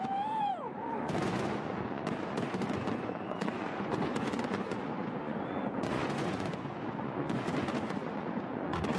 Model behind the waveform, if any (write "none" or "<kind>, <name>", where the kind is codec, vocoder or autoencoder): vocoder, Vocos